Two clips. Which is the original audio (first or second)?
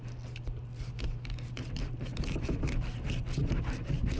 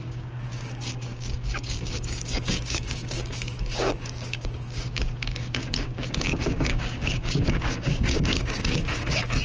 first